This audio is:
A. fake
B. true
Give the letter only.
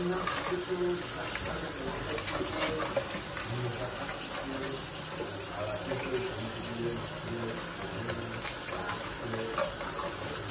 B